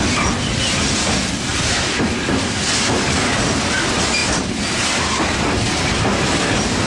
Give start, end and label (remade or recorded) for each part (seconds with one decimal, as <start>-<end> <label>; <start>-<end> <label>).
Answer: 0.0-1.5 recorded; 1.5-2.9 remade; 2.9-4.2 recorded; 4.2-5.4 remade; 5.4-6.9 recorded